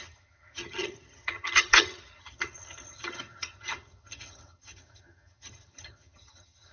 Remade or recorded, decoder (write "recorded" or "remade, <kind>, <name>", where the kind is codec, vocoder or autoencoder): remade, vocoder, HiFi-GAN